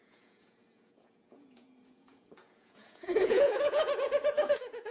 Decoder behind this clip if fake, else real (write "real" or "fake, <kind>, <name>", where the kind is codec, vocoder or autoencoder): fake, vocoder, Vocos